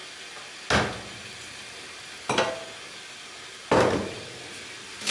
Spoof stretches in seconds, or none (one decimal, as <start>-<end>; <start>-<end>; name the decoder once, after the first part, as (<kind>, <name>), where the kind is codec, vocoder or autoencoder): none